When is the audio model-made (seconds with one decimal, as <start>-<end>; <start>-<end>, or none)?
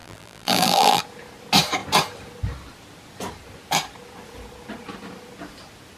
0.0-1.0